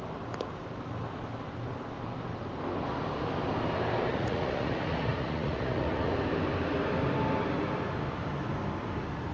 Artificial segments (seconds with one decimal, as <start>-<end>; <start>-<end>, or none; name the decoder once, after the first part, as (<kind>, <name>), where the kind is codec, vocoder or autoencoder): 4.1-6.1 (vocoder, Vocos)